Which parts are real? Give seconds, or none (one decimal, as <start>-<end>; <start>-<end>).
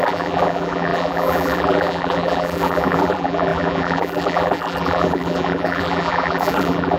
none